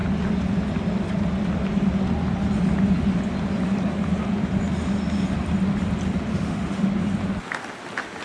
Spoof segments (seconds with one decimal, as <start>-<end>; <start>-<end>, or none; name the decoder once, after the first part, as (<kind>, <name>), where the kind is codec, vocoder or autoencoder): 6.3-6.9 (autoencoder, DAC-VAE)